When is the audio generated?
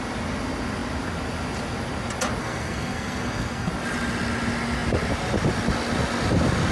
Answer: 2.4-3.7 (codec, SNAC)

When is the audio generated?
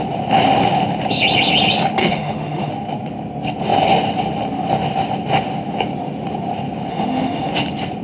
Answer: 2.0-2.7 (autoencoder, DAC-VAE); 6.9-7.5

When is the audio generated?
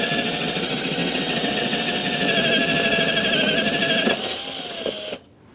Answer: 0.0-2.0 (vocoder, WaveNeXt)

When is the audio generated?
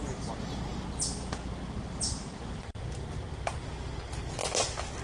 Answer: none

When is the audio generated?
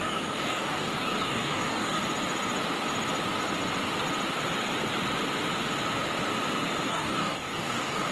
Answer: 0.0-2.0 (codec, DAC); 6.9-8.1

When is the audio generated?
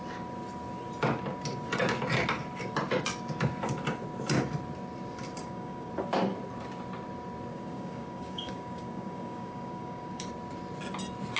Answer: 5.4-5.9 (codec, DAC); 7.5-10.2